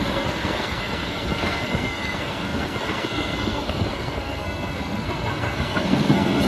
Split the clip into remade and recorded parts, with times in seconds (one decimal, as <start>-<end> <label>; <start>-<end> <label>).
0.0-6.5 remade